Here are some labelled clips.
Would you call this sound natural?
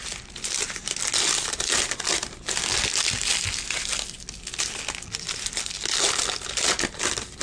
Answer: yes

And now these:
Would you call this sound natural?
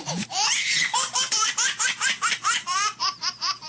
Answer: no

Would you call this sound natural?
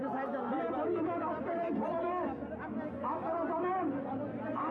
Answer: yes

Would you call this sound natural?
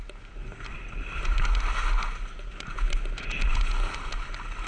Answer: yes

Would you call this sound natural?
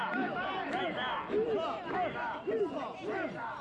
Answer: yes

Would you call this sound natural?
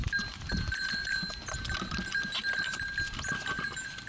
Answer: yes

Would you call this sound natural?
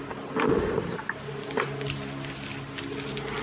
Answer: yes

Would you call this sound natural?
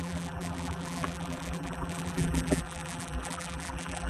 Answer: no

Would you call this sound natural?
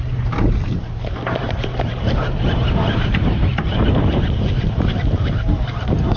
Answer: no